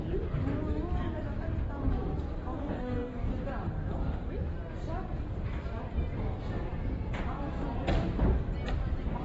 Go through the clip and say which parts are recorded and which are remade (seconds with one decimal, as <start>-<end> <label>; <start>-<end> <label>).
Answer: 0.0-2.6 recorded; 2.6-3.3 remade; 3.3-9.2 recorded